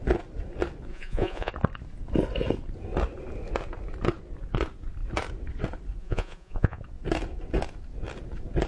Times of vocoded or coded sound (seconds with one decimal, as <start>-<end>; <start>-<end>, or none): 0.9-1.5; 6.0-6.8